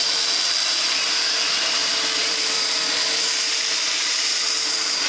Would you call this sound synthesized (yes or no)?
yes